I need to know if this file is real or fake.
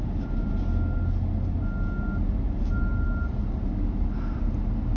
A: real